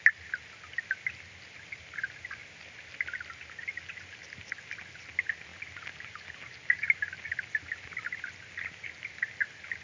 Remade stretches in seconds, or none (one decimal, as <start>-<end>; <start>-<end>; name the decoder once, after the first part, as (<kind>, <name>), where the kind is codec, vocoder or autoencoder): none